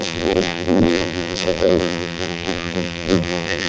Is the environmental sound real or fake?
fake